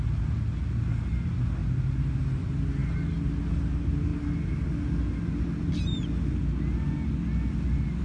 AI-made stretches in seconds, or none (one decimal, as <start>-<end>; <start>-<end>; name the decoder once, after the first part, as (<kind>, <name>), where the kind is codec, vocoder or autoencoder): none